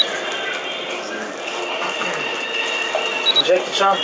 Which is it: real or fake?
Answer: real